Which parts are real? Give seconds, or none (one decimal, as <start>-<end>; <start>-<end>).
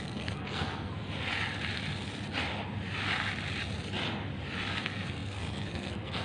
1.0-4.7